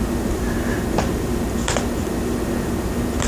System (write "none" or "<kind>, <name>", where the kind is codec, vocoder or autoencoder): none